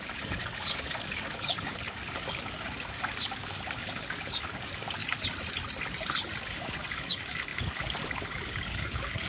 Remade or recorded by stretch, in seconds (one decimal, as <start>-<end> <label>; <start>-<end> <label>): 0.0-5.0 remade; 5.0-6.4 recorded; 6.4-9.3 remade